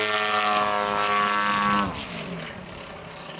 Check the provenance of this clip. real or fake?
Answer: real